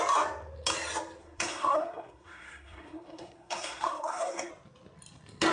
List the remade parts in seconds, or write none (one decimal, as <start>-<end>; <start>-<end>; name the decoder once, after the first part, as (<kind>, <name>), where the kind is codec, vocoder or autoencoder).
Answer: 1.2-4.5 (codec, SNAC)